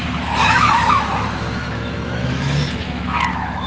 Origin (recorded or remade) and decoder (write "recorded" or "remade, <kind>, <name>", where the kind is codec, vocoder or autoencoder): remade, autoencoder, DAC-VAE